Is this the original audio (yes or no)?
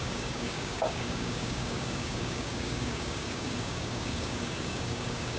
no